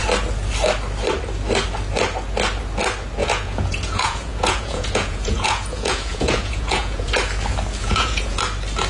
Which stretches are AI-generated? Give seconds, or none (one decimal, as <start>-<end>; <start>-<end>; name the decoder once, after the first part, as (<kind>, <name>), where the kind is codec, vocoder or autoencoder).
3.2-7.1 (vocoder, Vocos); 7.8-8.4